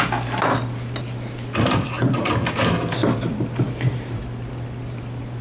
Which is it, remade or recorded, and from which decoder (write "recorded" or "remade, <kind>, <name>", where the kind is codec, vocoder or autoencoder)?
recorded